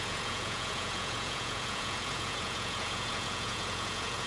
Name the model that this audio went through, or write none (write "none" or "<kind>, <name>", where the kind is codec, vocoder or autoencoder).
vocoder, Vocos